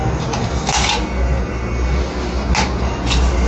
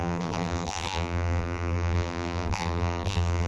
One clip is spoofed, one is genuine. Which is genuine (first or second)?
first